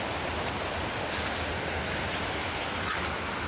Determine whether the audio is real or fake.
real